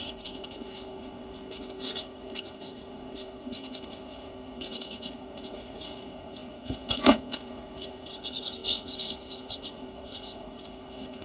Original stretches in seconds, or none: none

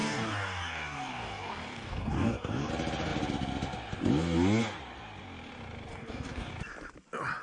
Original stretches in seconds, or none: 2.7-5.9; 6.5-7.4

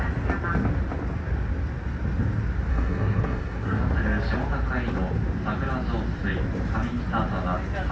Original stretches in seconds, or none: 0.0-2.7; 3.8-7.9

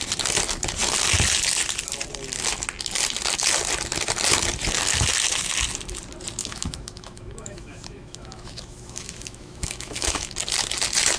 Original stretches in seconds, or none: 0.0-6.4; 10.3-11.2

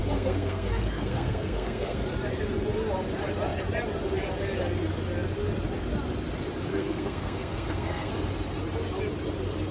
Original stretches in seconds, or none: 2.0-6.7; 8.1-9.7

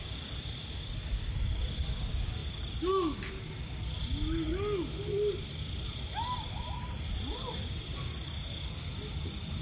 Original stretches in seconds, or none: 0.0-9.6

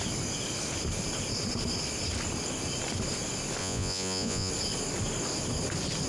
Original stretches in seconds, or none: 0.0-3.6; 4.5-6.1

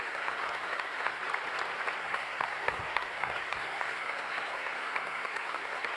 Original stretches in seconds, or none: 1.2-2.0